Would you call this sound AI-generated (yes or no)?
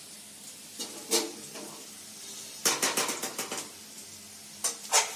yes